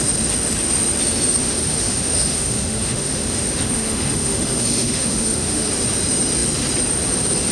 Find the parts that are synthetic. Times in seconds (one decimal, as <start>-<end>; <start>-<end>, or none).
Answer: 1.4-5.7